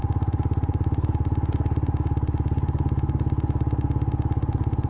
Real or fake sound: real